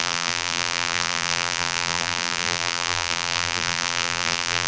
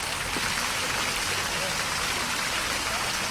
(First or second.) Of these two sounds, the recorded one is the second